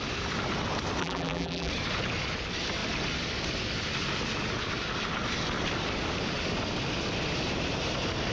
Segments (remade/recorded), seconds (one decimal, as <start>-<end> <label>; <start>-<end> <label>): 0.0-1.0 recorded; 1.0-1.7 remade; 1.7-8.3 recorded